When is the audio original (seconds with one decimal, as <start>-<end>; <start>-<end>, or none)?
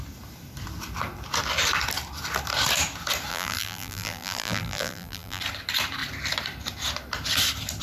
0.0-3.3; 5.4-7.8